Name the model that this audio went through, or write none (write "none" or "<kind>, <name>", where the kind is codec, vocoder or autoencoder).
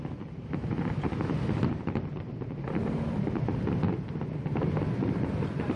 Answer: none